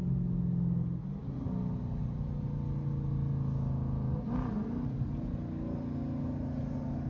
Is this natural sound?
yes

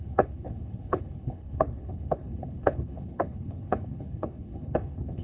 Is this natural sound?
no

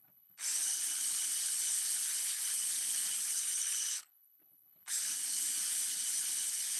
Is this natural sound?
no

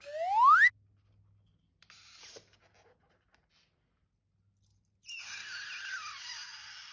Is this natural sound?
yes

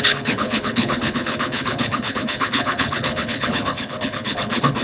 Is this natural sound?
no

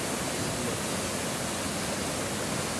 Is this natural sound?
yes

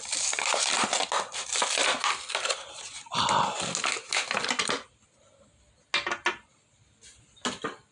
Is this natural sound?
yes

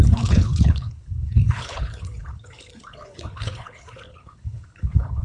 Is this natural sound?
no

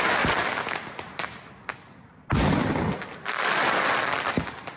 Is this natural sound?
yes